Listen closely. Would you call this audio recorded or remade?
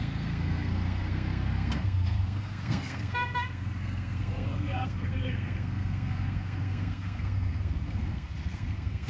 remade